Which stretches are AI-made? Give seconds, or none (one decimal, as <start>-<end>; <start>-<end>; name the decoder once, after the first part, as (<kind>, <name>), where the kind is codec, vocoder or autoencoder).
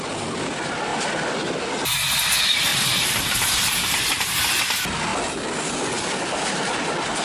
2.7-4.4 (vocoder, BigVGAN v2)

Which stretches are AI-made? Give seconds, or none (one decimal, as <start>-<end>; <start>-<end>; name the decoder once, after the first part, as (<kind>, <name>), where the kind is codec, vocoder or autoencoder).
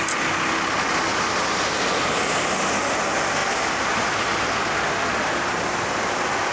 none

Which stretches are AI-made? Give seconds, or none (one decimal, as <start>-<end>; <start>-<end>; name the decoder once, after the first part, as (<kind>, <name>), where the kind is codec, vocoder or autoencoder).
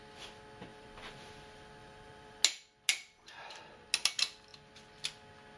0.7-1.3 (vocoder, BigVGAN v2); 1.8-2.4; 2.9-3.6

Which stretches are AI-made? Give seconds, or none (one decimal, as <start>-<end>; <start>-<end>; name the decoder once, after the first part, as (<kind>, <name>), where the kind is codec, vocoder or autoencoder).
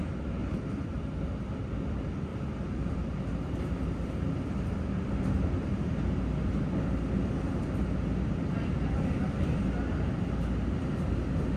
0.4-1.8 (vocoder, BigVGAN v2); 2.3-2.9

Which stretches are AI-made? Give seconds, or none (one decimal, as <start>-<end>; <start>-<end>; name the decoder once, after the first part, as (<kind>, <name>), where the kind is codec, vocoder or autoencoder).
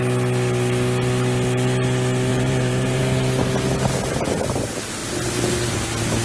2.3-3.0 (vocoder, BigVGAN v2)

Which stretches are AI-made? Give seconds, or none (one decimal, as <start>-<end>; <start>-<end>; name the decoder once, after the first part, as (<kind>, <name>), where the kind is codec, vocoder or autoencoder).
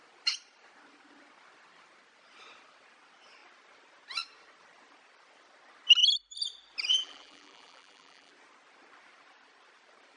6.9-8.3 (vocoder, BigVGAN v2)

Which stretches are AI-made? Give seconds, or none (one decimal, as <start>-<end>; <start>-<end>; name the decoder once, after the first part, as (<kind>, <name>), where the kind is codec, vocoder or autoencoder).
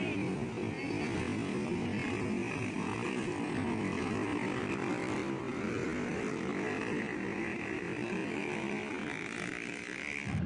4.3-7.0 (vocoder, BigVGAN v2)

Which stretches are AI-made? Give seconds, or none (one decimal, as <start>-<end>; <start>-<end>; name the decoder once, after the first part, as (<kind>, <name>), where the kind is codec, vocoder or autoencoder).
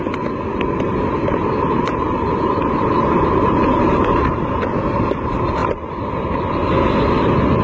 0.5-5.1 (vocoder, BigVGAN v2); 5.6-6.4